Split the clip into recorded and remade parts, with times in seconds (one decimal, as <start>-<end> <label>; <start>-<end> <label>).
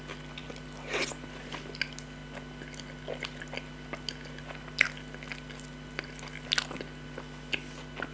0.0-8.1 recorded